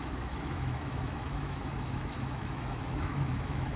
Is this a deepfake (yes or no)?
yes